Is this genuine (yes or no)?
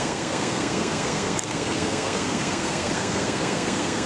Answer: no